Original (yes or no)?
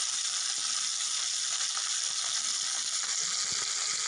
yes